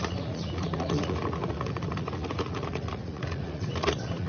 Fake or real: fake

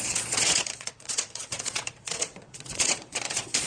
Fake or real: fake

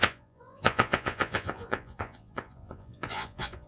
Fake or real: fake